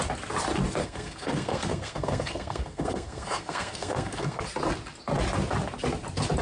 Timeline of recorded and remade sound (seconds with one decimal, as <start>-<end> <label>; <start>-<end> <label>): 0.0-0.8 recorded; 0.8-4.4 remade; 4.4-6.4 recorded